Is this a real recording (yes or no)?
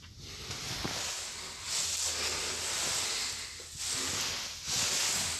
yes